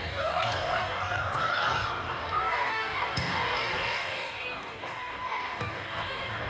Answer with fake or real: fake